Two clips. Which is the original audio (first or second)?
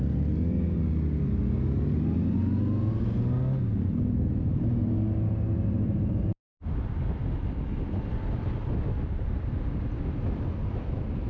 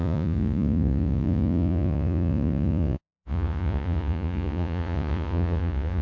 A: first